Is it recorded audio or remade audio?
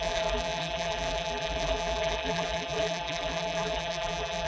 remade